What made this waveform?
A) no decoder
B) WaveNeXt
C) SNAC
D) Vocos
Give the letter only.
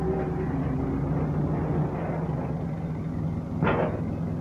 A